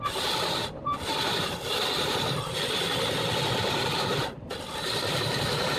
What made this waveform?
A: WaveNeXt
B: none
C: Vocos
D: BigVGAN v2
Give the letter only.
D